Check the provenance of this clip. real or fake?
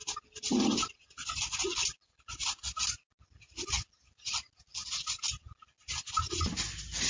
real